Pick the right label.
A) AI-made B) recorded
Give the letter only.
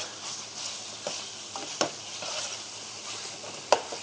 A